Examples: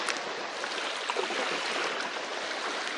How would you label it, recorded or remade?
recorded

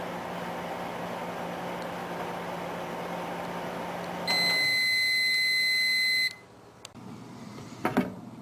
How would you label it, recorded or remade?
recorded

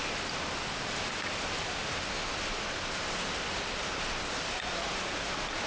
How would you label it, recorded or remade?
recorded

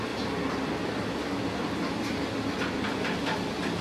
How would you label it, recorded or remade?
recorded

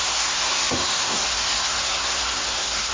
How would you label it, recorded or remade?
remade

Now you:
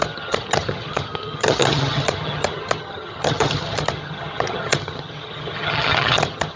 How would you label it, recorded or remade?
remade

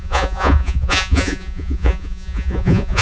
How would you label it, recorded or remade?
remade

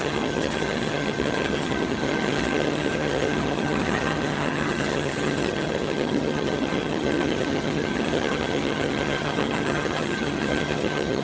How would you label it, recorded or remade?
remade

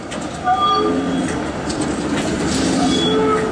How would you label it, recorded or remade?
recorded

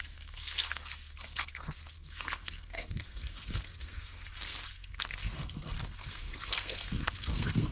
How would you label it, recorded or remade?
remade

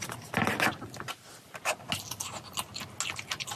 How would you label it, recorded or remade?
recorded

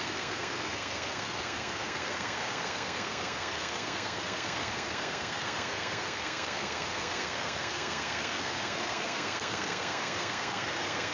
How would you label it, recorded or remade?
remade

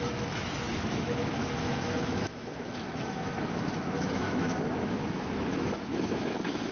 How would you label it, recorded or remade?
remade